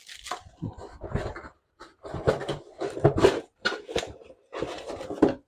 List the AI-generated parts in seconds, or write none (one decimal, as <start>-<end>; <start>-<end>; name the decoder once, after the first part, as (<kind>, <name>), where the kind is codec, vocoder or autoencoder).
1.5-4.8 (vocoder, BigVGAN v2)